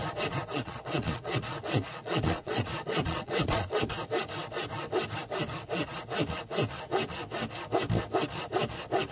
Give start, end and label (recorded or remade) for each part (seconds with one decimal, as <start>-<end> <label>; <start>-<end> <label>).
0.0-0.5 recorded; 0.5-3.8 remade; 3.8-9.1 recorded